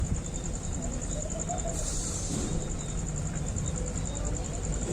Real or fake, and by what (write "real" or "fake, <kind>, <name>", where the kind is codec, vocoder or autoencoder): real